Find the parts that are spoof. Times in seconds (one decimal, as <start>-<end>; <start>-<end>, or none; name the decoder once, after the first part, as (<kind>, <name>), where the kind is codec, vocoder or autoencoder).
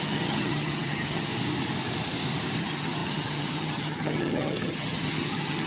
0.0-1.3 (vocoder, HiFi-GAN); 2.6-5.7